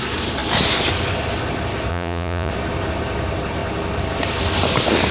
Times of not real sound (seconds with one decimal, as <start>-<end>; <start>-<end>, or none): 1.9-2.5